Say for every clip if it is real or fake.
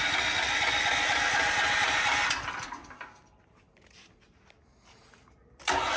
real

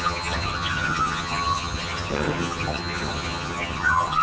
fake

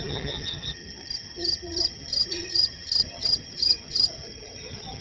fake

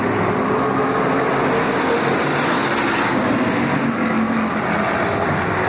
real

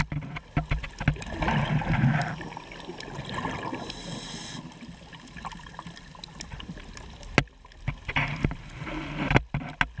real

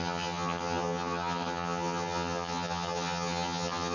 fake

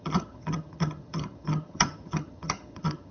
fake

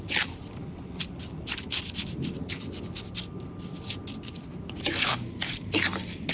real